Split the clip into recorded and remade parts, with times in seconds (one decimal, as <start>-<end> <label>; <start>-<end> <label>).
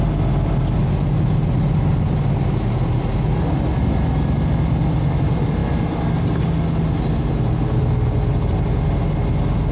0.0-9.7 recorded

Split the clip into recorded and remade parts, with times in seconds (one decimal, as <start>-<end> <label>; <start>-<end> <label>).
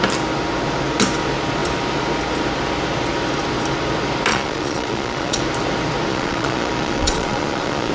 0.0-4.3 recorded; 4.3-5.4 remade; 5.4-6.1 recorded; 6.1-7.9 remade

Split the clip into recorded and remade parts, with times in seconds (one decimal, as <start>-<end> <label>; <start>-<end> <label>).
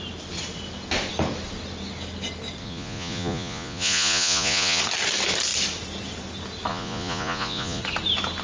0.0-2.6 recorded; 2.6-4.8 remade; 4.8-6.7 recorded; 6.7-7.8 remade; 7.8-8.4 recorded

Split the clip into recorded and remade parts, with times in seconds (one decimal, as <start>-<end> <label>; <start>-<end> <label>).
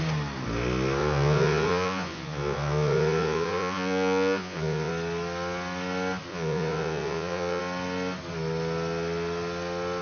0.0-1.0 recorded; 1.0-4.9 remade; 4.9-6.3 recorded; 6.3-7.6 remade; 7.6-10.0 recorded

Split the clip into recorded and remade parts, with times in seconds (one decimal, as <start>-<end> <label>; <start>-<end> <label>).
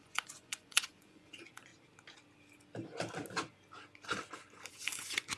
0.0-1.7 remade; 1.7-4.7 recorded; 4.7-5.4 remade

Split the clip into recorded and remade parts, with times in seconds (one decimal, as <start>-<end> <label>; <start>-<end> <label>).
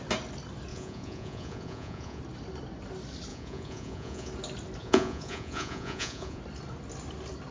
0.0-0.7 recorded; 0.7-2.2 remade; 2.2-3.3 recorded; 3.3-4.3 remade; 4.3-4.8 recorded; 4.8-6.4 remade; 6.4-7.5 recorded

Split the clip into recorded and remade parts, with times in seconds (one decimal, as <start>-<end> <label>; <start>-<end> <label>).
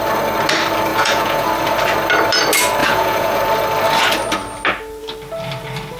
0.0-0.9 recorded; 0.9-1.5 remade; 1.5-2.8 recorded; 2.8-3.4 remade; 3.4-6.0 recorded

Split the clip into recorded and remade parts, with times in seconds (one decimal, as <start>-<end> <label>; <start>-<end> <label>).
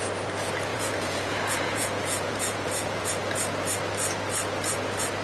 0.0-0.7 recorded; 0.7-3.2 remade; 3.2-5.2 recorded